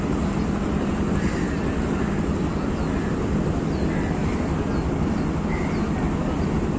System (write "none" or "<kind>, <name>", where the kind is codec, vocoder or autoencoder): none